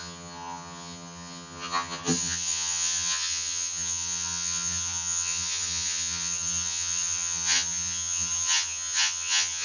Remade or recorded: remade